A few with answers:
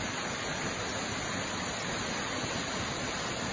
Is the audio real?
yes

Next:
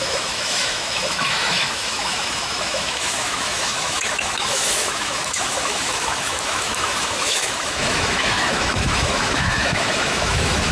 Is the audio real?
no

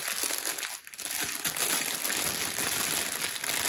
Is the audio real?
yes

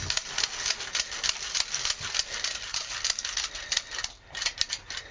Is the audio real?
yes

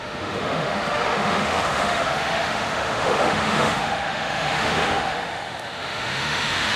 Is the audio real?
no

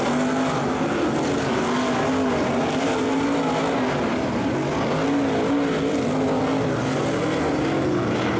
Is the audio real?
yes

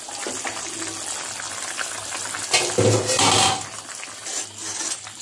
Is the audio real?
yes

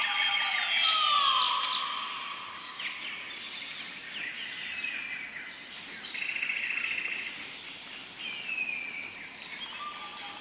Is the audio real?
yes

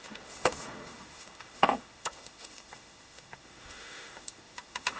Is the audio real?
no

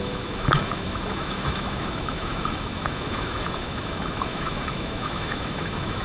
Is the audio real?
no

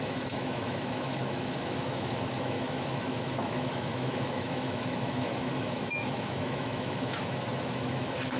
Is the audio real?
no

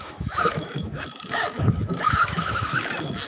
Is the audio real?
no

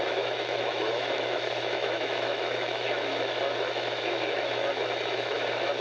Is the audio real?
no